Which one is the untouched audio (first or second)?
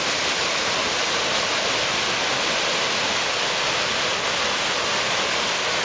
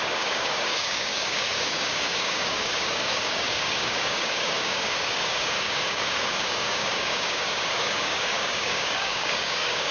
first